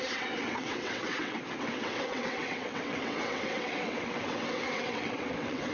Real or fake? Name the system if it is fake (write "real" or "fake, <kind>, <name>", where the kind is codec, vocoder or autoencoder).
fake, vocoder, WaveNeXt